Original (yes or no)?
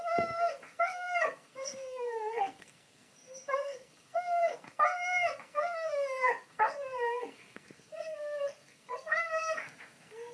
no